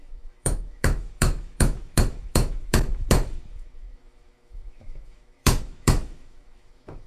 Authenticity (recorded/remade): remade